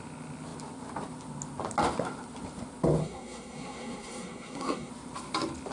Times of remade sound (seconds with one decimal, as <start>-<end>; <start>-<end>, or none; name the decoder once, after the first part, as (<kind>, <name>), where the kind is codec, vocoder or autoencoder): 3.0-4.9 (codec, SNAC)